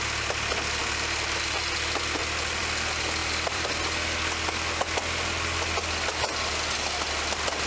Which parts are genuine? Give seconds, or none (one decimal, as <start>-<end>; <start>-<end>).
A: 0.0-3.2; 3.8-7.7